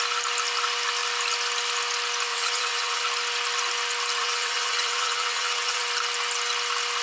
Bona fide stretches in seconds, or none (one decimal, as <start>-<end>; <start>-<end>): 0.0-2.3; 3.0-4.2; 5.8-7.0

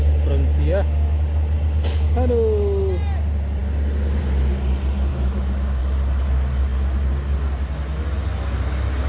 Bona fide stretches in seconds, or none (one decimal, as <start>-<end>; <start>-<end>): 0.0-5.1; 5.8-9.1